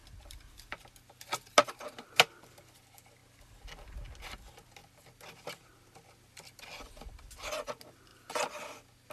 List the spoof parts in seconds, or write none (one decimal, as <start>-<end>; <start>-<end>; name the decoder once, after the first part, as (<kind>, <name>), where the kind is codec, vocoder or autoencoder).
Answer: 0.0-0.9 (vocoder, BigVGAN v2)